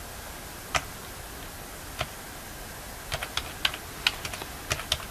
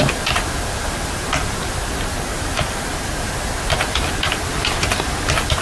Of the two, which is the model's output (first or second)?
second